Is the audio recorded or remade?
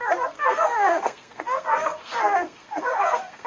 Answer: remade